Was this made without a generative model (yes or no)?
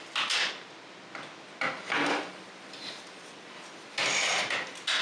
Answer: yes